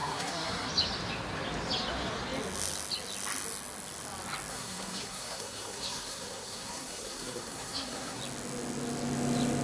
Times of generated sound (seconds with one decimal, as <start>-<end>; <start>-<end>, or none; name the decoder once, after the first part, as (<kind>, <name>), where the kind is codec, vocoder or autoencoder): 0.0-0.7 (codec, SNAC); 4.5-8.2